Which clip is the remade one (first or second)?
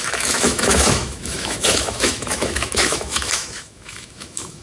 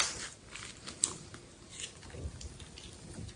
first